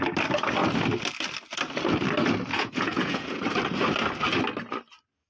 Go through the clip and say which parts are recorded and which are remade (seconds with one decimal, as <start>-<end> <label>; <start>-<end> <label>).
0.0-2.5 recorded; 2.5-3.4 remade; 3.4-5.3 recorded